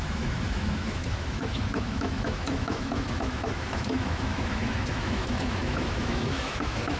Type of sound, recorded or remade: remade